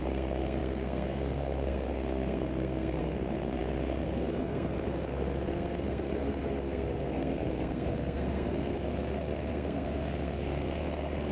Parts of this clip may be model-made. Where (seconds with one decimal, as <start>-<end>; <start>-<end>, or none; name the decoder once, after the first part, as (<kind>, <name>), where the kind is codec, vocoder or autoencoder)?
0.0-11.3 (codec, SNAC)